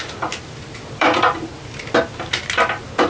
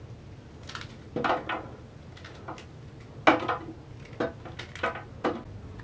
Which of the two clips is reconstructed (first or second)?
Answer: first